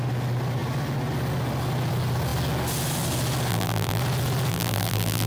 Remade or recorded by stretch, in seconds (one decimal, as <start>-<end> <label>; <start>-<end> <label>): 0.0-3.5 recorded; 3.5-4.0 remade; 4.0-4.5 recorded; 4.5-5.3 remade